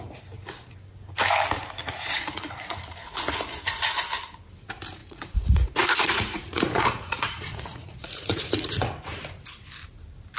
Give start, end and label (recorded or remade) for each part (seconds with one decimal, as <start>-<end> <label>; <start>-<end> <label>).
0.0-1.8 recorded; 1.8-3.8 remade; 3.8-5.0 recorded; 5.0-9.3 remade; 9.3-10.4 recorded